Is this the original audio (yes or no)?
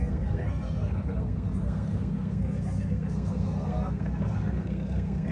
no